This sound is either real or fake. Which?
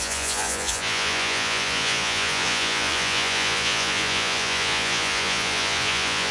fake